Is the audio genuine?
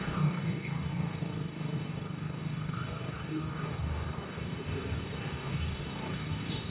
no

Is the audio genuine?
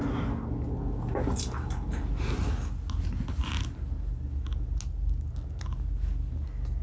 yes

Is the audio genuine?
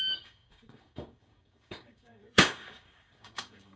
no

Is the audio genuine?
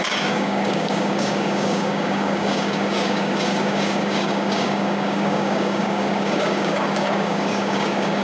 no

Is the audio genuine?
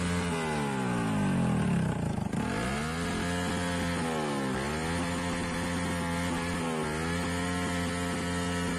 yes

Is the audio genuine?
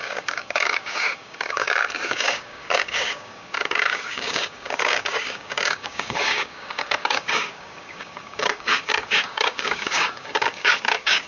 no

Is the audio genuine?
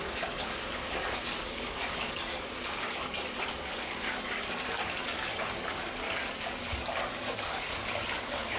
no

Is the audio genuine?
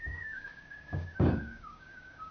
no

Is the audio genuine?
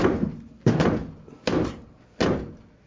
yes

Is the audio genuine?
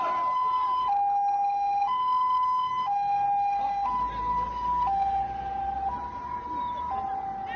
yes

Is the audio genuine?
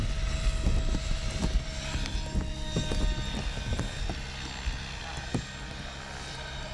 yes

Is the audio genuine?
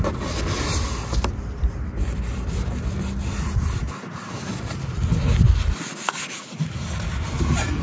yes